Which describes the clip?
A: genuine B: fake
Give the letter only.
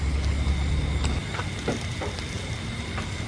A